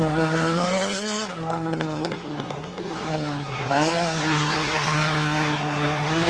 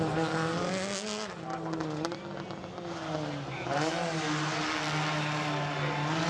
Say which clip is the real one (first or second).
second